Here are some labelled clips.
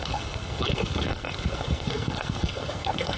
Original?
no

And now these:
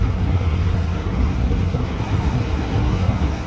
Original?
no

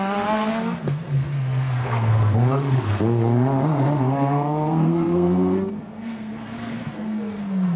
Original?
no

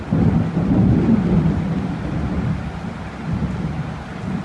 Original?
yes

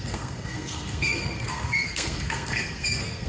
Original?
no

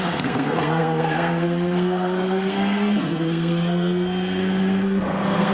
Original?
no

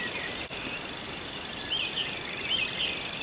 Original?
yes